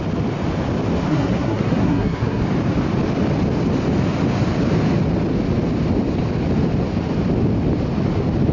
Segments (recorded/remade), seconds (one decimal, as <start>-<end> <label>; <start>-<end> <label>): 0.0-1.1 recorded; 1.1-2.4 remade; 2.4-8.5 recorded